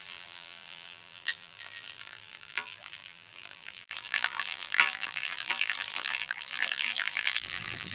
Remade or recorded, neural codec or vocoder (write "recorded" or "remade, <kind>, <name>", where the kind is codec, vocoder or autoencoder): remade, vocoder, BigVGAN v2